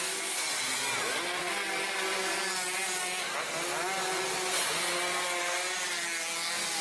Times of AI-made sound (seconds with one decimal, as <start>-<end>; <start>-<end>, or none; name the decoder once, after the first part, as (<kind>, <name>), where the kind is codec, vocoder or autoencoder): none